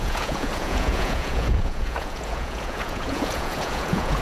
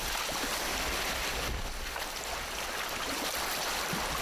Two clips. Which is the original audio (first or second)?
second